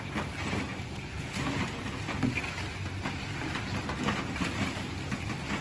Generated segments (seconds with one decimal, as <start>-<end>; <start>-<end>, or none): none

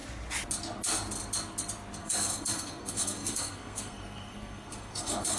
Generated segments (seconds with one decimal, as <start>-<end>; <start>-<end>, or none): 2.0-5.4

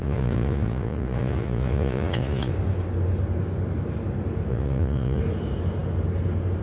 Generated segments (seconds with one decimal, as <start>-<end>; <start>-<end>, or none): 0.0-2.5; 4.5-5.2

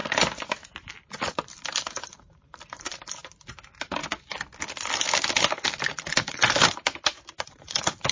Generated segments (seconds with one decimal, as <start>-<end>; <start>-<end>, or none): 1.3-4.0; 5.8-8.1

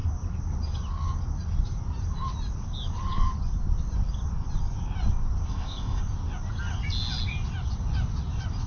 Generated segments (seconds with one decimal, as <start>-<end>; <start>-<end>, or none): 5.5-6.0

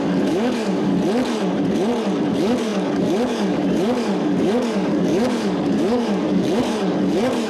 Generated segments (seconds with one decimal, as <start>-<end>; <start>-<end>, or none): 0.0-0.9; 2.3-7.5

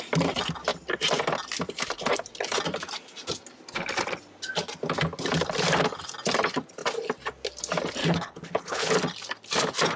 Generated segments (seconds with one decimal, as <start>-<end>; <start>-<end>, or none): 8.0-8.9